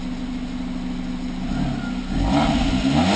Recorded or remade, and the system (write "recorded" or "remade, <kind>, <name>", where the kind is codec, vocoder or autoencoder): recorded